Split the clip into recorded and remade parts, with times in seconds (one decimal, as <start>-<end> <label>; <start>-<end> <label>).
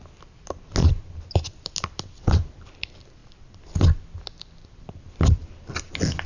0.0-6.3 recorded